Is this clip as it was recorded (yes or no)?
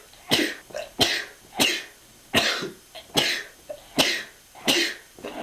yes